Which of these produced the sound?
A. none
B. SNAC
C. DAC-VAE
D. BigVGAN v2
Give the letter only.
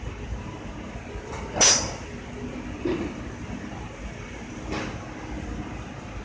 A